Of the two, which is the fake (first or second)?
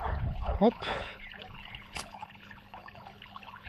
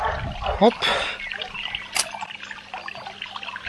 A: first